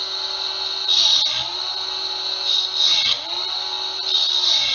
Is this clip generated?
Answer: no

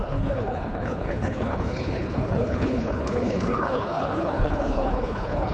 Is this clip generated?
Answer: yes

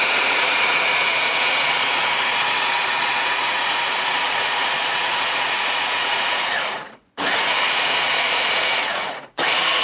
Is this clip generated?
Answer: yes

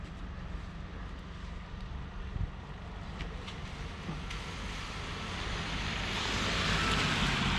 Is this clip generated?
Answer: no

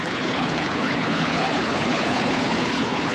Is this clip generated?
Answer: yes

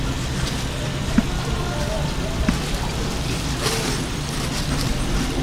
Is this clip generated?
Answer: no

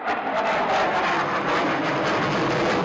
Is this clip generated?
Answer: no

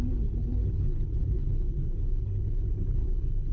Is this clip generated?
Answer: yes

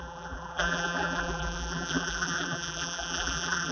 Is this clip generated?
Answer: yes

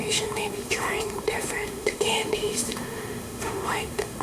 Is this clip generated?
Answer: yes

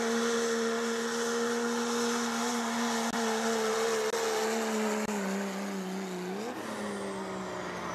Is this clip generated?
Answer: no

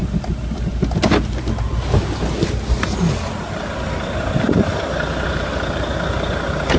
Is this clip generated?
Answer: no